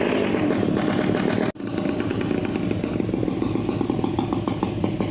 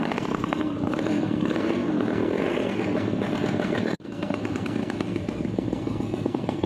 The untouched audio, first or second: first